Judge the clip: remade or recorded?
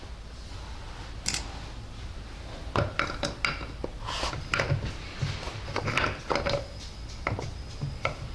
recorded